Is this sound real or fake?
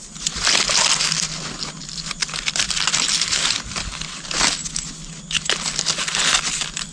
real